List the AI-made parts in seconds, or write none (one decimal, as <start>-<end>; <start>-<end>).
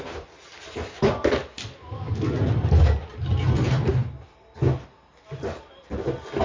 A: none